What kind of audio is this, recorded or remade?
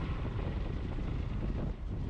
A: recorded